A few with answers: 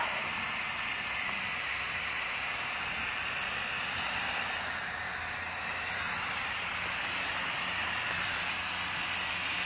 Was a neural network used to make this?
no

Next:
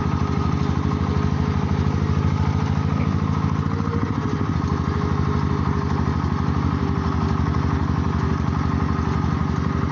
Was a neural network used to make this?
no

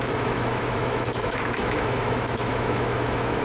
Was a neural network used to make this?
yes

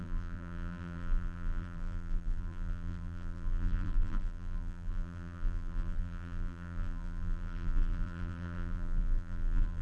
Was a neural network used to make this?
yes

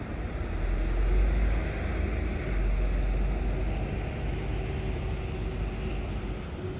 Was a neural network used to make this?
no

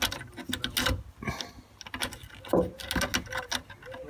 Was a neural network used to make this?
no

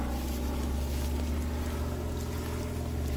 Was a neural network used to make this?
no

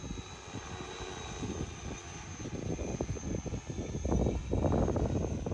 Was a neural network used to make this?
no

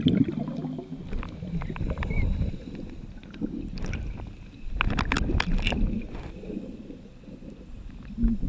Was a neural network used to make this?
no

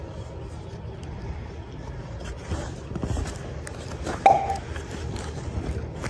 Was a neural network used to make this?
no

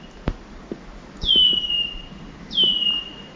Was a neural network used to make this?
no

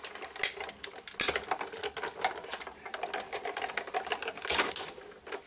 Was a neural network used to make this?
no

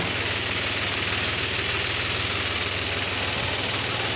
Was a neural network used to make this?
no